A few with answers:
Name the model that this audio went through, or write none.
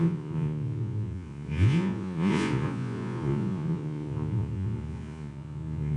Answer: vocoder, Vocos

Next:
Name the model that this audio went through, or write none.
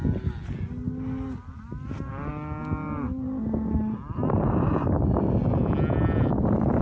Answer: none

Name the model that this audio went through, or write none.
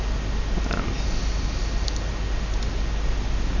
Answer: none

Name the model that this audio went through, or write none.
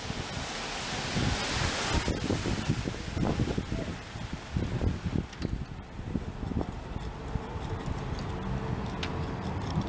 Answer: none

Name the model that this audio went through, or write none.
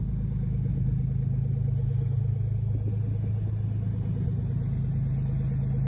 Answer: none